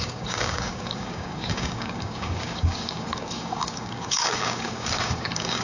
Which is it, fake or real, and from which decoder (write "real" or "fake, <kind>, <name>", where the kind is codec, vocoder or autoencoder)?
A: fake, codec, DAC